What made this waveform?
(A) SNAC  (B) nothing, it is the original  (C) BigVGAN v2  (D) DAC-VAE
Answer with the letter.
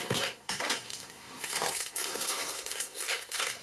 A